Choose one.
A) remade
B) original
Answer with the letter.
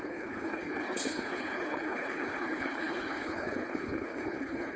A